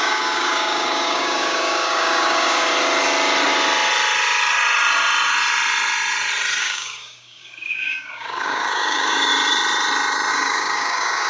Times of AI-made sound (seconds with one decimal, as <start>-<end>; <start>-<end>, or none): 0.0-2.7; 6.6-9.3; 10.3-11.3